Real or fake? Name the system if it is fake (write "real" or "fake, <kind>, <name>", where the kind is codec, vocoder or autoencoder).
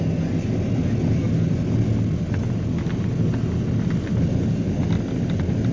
real